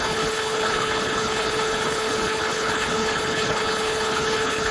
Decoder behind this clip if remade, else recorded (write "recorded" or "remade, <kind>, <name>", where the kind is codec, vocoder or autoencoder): remade, codec, HILCodec